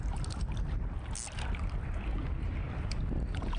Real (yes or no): yes